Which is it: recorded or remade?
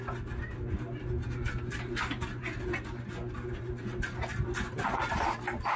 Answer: recorded